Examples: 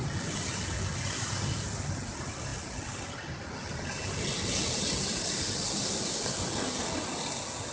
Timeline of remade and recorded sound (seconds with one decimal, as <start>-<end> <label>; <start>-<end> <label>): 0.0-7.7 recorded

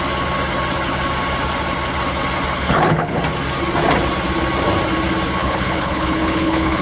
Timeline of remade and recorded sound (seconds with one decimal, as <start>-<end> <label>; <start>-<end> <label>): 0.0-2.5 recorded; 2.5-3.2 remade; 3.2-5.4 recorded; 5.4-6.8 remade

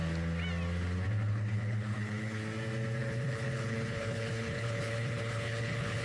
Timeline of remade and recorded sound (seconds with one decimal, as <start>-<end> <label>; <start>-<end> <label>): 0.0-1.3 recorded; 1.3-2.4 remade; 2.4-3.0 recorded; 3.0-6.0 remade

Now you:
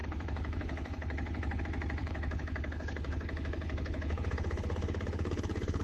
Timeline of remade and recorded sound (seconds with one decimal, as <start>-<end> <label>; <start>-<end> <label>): 0.0-1.6 remade; 1.6-2.0 recorded; 2.0-5.8 remade

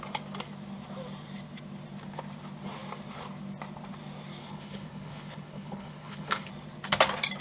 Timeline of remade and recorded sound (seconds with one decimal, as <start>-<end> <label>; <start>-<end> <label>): 0.0-4.4 recorded; 4.4-6.5 remade; 6.5-7.4 recorded

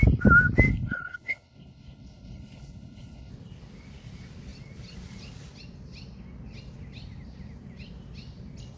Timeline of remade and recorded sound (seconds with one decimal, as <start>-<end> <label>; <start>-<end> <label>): 0.0-0.7 recorded; 0.7-3.3 remade; 3.3-8.8 recorded